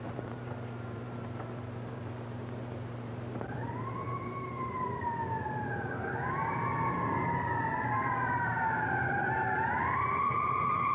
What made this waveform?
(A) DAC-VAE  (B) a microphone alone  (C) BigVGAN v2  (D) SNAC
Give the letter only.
C